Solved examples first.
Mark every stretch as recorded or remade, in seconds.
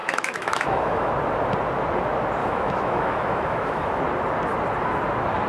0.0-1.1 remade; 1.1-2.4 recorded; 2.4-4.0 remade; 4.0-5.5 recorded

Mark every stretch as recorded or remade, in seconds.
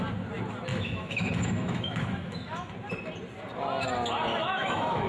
0.0-0.7 recorded; 0.7-2.7 remade; 2.7-4.4 recorded; 4.4-5.1 remade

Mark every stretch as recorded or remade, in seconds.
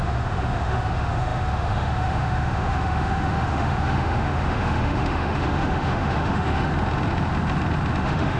0.0-6.7 remade; 6.7-8.0 recorded; 8.0-8.4 remade